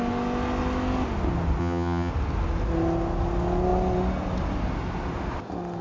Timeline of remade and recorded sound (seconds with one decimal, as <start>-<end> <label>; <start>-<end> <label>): 0.0-1.6 recorded; 1.6-2.1 remade; 2.1-5.8 recorded